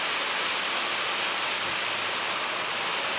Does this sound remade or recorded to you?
recorded